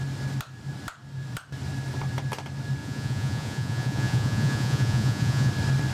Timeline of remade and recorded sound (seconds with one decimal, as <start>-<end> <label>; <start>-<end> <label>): 0.0-2.8 recorded; 2.8-5.5 remade; 5.5-5.9 recorded